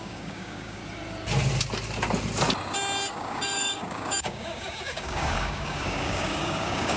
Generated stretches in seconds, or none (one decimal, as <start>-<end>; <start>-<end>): 0.0-0.8; 3.1-7.0